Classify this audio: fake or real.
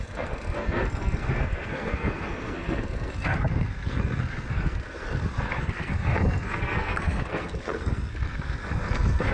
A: fake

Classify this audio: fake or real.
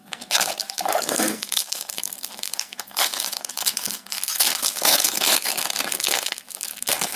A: fake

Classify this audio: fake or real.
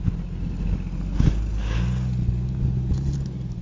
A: real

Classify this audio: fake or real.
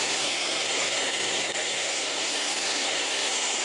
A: fake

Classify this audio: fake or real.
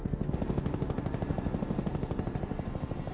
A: real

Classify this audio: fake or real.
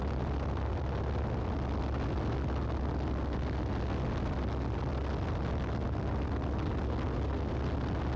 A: real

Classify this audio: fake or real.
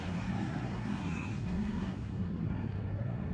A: fake